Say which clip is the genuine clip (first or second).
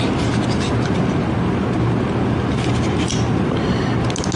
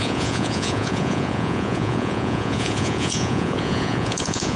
first